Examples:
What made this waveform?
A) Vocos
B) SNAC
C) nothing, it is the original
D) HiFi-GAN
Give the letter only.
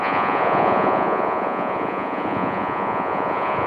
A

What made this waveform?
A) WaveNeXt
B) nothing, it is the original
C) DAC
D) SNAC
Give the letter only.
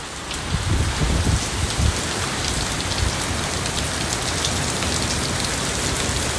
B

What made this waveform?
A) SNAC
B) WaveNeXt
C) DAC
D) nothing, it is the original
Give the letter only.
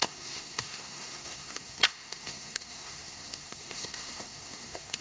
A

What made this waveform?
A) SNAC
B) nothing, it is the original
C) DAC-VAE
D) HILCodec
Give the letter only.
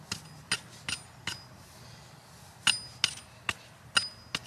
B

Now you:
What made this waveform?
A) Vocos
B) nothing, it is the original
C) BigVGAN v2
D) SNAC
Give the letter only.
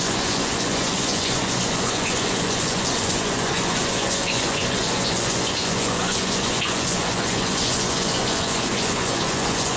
A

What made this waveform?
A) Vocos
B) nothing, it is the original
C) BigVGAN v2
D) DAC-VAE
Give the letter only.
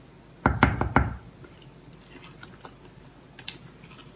B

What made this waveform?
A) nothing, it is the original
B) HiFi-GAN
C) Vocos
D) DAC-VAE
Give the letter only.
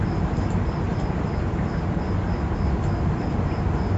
A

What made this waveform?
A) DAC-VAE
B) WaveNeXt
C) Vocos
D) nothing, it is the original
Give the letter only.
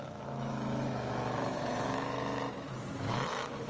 A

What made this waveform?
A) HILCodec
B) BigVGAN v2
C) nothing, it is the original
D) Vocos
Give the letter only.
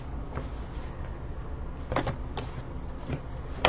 C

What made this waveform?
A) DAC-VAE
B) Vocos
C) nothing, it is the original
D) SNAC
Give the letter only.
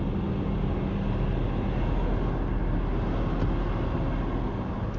C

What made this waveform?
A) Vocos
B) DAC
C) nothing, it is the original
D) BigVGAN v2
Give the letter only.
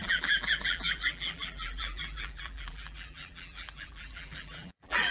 D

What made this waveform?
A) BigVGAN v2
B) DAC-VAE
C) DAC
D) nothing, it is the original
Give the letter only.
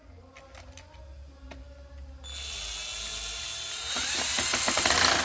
D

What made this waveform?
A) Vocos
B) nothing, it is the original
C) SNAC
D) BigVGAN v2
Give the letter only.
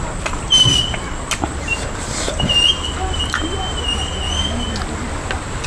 B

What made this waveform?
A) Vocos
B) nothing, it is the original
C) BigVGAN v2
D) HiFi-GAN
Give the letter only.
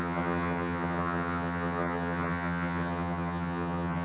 D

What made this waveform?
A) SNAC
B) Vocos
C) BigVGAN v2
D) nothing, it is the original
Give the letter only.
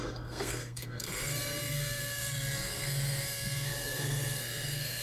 A